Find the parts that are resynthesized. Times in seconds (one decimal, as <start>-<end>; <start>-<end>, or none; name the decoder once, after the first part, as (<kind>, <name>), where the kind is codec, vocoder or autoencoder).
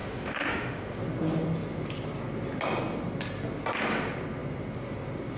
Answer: 0.0-1.0 (autoencoder, DAC-VAE)